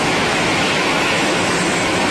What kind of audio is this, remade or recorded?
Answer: remade